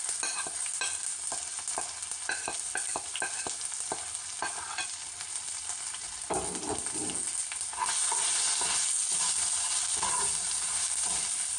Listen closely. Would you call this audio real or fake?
real